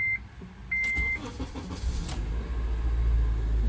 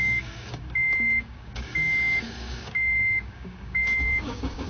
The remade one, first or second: second